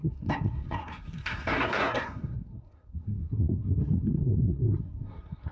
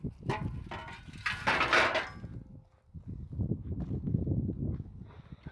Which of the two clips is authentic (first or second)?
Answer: second